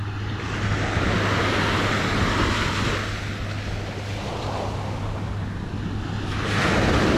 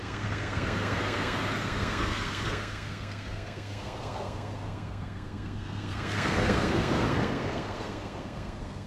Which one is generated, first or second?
second